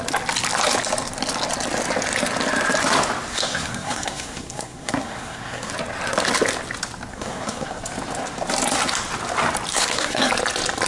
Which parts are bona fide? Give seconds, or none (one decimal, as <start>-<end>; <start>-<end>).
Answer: 0.0-3.3; 5.7-7.1; 7.8-9.7; 10.3-10.9